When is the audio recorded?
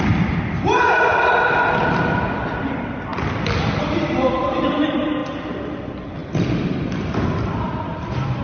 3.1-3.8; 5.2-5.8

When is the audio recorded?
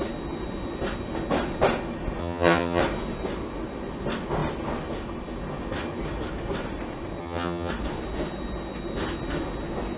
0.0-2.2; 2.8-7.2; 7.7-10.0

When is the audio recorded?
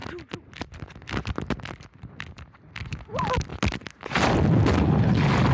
0.0-5.5